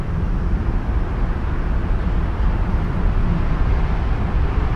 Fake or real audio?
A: real